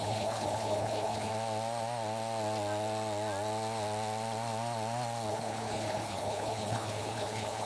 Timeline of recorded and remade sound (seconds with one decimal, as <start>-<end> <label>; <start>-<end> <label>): 0.0-1.3 remade; 1.3-5.3 recorded; 5.3-7.7 remade